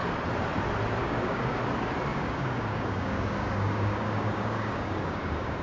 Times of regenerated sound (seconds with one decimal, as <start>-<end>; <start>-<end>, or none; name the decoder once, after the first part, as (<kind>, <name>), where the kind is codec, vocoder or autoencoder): 1.0-1.6 (codec, DAC); 2.1-5.6